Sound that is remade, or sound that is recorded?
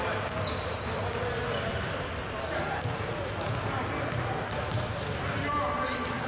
recorded